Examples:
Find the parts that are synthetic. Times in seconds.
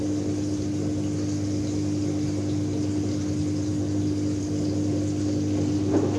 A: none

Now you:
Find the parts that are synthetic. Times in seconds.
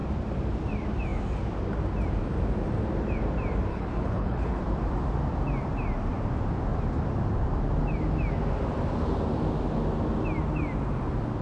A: 3.7-4.6 (codec, HILCodec)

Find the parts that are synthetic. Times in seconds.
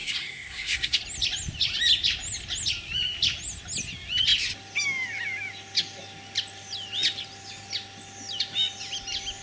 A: 0.0-1.0 (codec, SNAC)